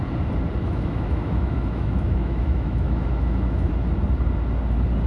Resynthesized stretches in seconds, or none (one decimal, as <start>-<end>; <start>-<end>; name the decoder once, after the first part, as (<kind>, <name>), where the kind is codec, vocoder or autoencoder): 0.6-3.7 (autoencoder, DAC-VAE)